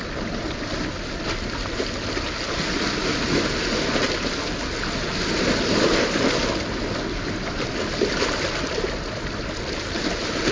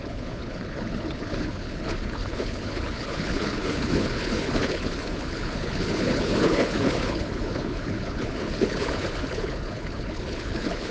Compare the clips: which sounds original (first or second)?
first